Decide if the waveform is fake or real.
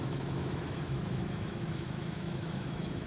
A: fake